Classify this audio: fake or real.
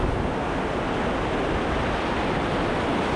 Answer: real